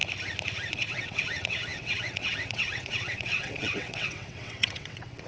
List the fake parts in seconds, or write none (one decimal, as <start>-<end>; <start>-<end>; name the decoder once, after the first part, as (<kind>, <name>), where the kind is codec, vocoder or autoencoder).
0.7-5.3 (vocoder, WaveNeXt)